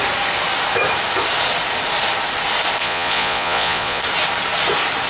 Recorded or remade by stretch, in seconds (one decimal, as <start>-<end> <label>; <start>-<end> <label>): 0.0-2.8 recorded; 2.8-4.0 remade; 4.0-5.1 recorded